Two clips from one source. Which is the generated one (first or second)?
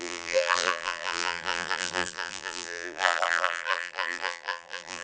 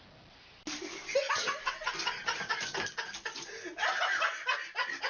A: first